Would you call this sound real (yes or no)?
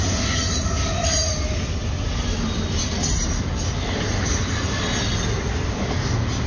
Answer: yes